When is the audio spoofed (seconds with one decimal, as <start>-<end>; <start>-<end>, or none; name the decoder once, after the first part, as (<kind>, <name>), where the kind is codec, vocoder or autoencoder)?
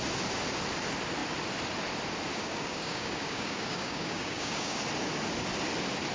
2.3-4.8 (codec, DAC)